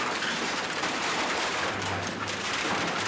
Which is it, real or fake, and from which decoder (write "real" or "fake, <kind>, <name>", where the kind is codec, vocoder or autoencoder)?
fake, vocoder, BigVGAN v2